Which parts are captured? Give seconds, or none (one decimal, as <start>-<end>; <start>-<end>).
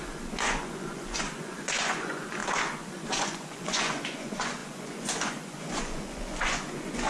none